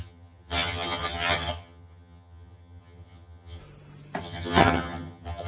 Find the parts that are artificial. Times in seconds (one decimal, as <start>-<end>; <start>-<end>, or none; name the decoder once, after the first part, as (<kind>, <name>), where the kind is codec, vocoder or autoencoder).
0.0-3.6 (vocoder, HiFi-GAN); 4.2-5.5